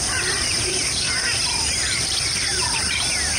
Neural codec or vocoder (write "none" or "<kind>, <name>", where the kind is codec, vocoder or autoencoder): vocoder, BigVGAN v2